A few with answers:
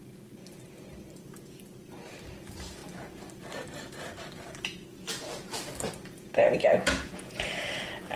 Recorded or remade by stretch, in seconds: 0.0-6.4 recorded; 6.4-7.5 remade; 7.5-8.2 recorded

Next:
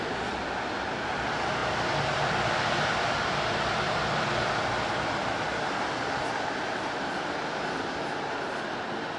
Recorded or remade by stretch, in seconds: 0.0-9.2 recorded